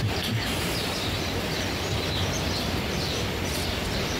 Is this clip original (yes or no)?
no